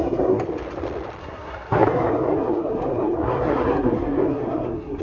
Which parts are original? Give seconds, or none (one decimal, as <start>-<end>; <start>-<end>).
0.4-1.2